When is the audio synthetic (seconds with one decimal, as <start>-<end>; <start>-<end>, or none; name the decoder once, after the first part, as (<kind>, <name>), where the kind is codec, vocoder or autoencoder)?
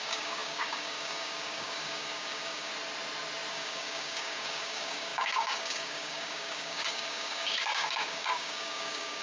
0.0-2.7 (codec, DAC); 3.5-9.2